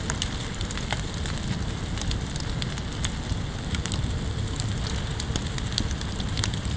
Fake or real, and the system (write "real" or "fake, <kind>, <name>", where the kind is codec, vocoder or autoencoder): fake, vocoder, BigVGAN v2